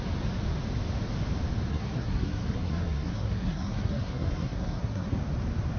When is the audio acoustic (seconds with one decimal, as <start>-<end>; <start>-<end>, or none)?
0.0-1.7; 5.2-5.8